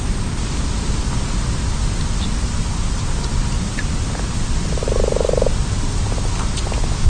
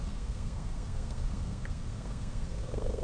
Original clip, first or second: first